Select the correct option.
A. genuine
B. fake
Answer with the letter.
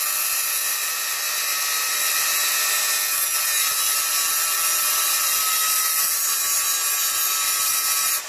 A